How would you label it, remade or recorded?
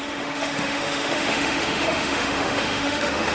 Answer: remade